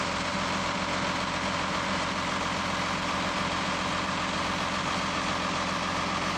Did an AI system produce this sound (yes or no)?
no